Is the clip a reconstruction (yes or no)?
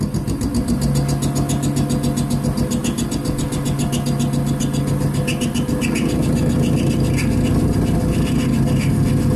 no